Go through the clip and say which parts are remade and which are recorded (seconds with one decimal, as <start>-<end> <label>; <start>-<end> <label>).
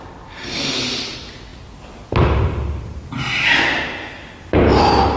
0.0-5.2 recorded